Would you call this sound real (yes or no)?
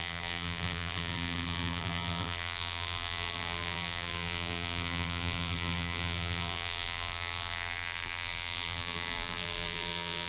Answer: no